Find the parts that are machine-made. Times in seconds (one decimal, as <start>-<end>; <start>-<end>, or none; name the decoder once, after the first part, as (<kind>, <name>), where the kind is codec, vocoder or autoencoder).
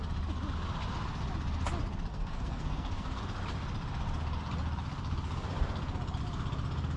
2.1-3.2 (codec, SNAC)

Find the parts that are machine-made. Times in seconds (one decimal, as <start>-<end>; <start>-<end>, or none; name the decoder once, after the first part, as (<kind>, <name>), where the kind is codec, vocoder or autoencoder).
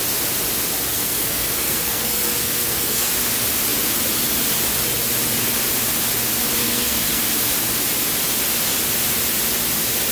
0.9-3.1 (codec, SNAC); 6.6-7.2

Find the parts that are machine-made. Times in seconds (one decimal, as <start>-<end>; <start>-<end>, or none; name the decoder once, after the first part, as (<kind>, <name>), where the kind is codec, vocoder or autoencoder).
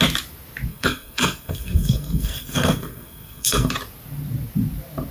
0.7-3.7 (codec, SNAC)